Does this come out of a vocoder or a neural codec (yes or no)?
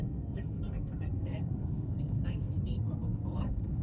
yes